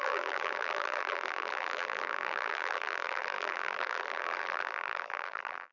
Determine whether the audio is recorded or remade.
remade